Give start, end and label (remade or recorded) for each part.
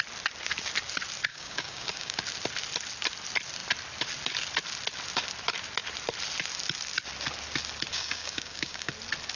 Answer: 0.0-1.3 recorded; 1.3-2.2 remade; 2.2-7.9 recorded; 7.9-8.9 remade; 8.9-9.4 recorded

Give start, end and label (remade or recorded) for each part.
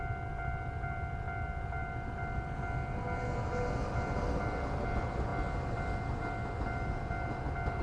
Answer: 0.0-7.8 recorded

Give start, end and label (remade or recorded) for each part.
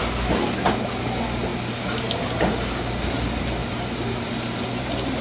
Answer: 0.0-5.2 recorded